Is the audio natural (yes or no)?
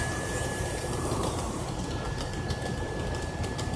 no